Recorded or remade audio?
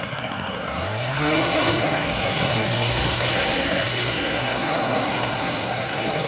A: remade